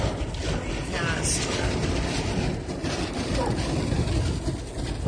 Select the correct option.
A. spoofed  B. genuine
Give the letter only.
B